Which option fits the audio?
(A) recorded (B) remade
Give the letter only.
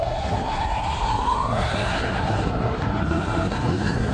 B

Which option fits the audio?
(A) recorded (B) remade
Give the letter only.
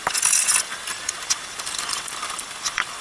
B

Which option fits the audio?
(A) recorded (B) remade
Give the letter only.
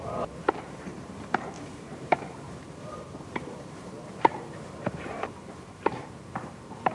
B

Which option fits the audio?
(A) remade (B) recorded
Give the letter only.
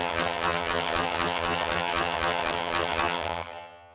A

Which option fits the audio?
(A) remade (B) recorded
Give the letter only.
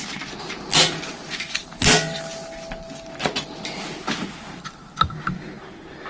B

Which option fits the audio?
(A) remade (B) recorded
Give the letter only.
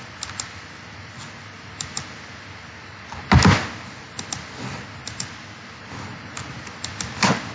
B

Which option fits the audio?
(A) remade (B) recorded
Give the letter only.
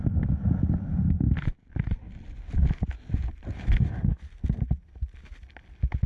B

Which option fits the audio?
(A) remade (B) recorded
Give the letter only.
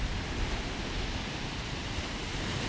B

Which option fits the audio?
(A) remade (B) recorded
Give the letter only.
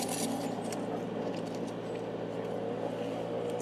B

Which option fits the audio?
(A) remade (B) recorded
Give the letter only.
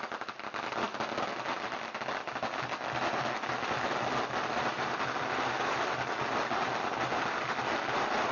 B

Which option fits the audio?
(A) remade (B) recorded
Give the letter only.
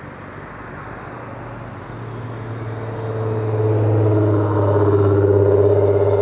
B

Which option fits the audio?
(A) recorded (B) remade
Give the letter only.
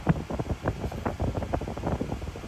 A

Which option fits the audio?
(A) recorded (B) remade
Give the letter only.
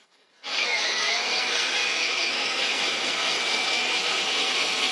B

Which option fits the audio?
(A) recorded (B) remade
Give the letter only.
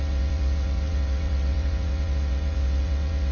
B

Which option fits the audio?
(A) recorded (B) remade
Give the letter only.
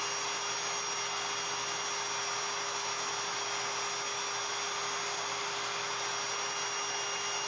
A